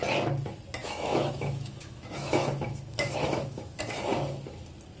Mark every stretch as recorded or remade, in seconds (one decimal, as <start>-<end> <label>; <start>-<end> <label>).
0.0-0.8 recorded; 0.8-3.8 remade; 3.8-5.0 recorded